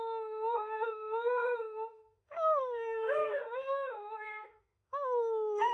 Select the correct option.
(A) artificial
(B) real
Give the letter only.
A